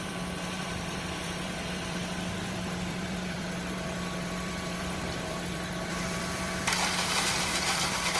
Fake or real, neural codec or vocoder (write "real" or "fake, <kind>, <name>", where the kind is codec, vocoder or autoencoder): fake, vocoder, BigVGAN v2